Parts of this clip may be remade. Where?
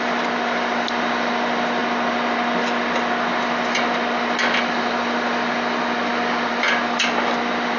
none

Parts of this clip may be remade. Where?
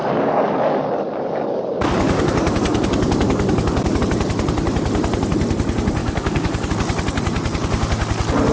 0.0-4.0; 6.0-6.7